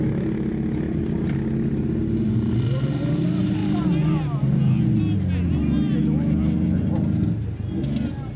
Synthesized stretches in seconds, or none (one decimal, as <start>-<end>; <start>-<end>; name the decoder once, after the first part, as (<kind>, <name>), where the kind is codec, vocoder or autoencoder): none